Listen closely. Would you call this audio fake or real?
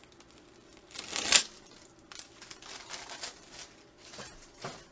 real